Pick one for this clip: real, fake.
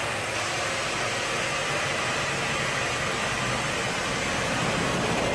real